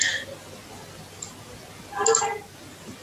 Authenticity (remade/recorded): recorded